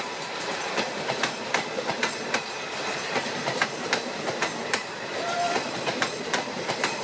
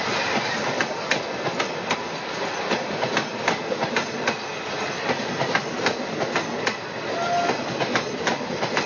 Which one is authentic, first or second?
second